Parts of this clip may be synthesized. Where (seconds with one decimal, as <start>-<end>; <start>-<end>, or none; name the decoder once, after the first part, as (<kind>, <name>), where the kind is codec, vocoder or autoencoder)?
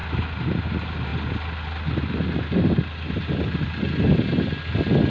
none